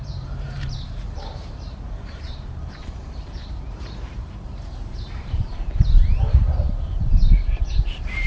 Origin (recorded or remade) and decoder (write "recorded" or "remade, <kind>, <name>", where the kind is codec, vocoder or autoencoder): remade, vocoder, BigVGAN v2